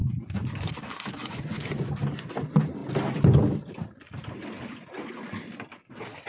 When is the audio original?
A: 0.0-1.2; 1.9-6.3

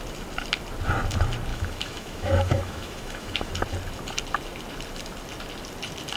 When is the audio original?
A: 0.0-1.5; 3.5-6.2

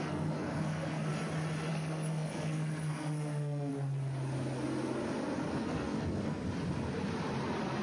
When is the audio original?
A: 1.1-1.7; 3.7-5.5; 6.4-7.8